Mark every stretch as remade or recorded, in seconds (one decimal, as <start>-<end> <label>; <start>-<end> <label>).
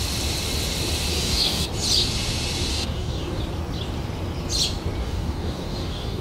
0.0-1.1 recorded; 1.1-1.7 remade; 1.7-2.7 recorded; 2.7-3.4 remade; 3.4-5.0 recorded; 5.0-6.2 remade